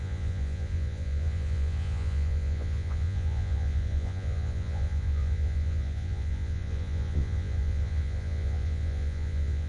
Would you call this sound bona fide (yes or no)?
no